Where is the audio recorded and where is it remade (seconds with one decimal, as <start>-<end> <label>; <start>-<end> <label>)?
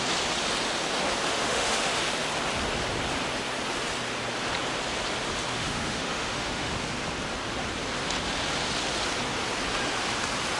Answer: 0.0-1.3 recorded; 1.3-2.0 remade; 2.0-5.5 recorded; 5.5-6.7 remade; 6.7-10.6 recorded